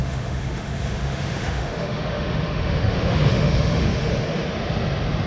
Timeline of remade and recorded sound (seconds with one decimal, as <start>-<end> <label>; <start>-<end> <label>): 0.0-4.1 remade; 4.1-5.3 recorded